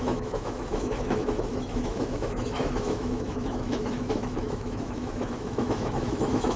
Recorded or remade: remade